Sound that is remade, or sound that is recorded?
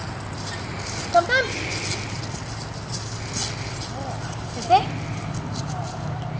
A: recorded